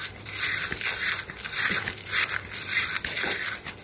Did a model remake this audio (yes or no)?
yes